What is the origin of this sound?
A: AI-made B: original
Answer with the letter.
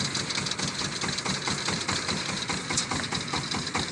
B